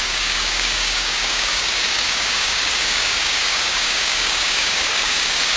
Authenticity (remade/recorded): remade